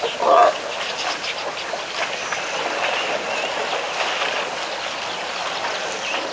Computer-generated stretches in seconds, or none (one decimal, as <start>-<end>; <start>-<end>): none